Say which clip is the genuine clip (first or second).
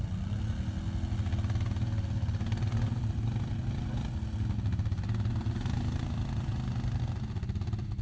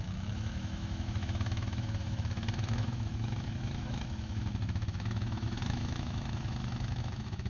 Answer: first